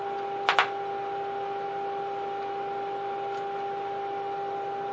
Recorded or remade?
recorded